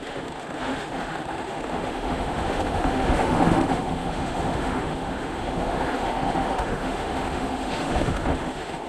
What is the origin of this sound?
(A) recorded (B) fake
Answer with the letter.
B